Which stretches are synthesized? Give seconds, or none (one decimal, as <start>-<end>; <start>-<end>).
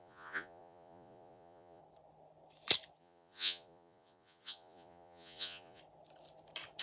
0.0-1.8; 3.0-5.8